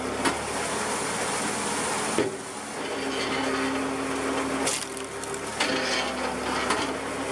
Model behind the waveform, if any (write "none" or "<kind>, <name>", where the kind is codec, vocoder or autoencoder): none